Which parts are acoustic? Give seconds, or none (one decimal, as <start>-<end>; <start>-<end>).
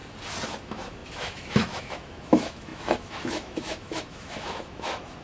0.0-0.6